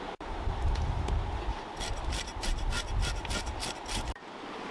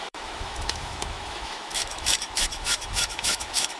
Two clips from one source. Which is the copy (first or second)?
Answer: second